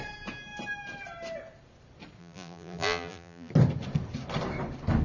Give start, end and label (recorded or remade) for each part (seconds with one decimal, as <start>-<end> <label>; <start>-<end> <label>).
0.0-2.2 recorded; 2.2-3.5 remade; 3.5-5.0 recorded